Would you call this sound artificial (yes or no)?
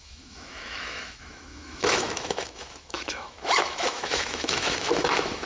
yes